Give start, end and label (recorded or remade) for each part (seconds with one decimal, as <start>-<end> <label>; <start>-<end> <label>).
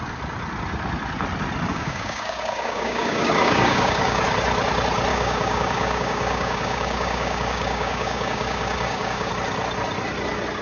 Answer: 0.0-1.7 recorded; 1.7-4.2 remade; 4.2-5.1 recorded; 5.1-9.3 remade; 9.3-10.6 recorded